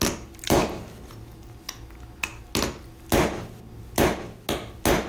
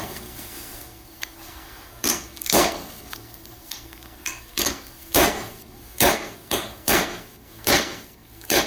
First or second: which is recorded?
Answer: first